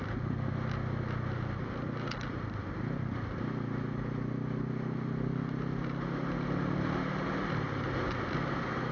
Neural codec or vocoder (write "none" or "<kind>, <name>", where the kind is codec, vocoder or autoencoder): none